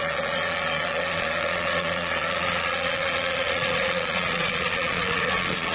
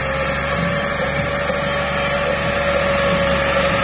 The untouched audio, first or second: second